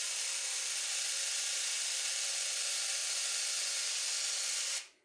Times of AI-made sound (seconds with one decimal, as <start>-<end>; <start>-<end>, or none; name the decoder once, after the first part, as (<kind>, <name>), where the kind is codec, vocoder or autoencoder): 1.3-2.0 (vocoder, BigVGAN v2)